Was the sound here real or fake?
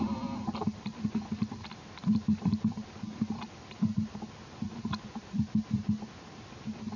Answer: real